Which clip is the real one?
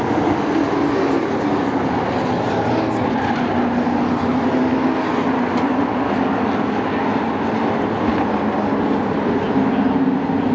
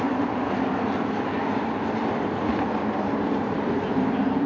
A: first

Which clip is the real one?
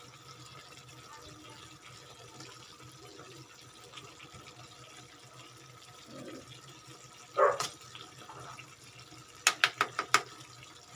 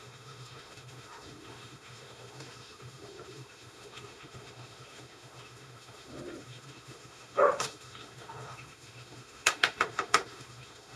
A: first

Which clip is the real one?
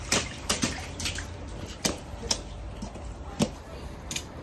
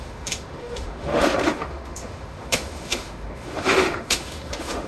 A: first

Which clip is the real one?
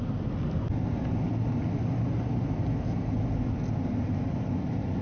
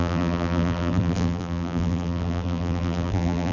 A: first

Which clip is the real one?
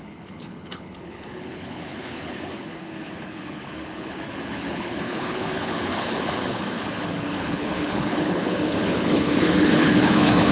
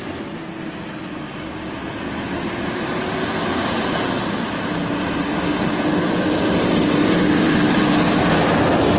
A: second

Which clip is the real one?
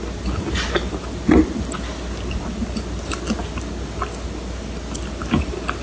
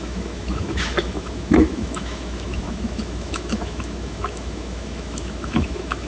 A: first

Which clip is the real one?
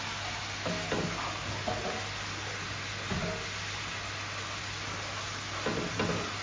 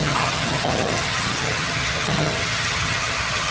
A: first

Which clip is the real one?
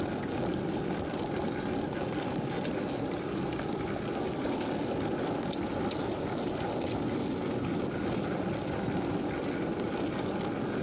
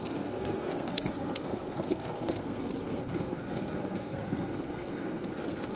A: first